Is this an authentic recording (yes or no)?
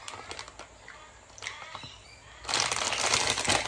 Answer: yes